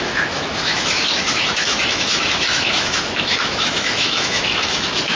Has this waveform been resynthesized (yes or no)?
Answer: yes